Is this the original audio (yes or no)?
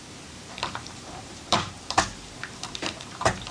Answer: no